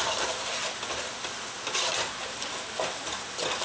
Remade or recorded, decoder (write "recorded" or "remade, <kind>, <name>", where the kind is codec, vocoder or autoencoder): recorded